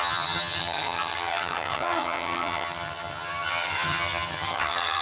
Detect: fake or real fake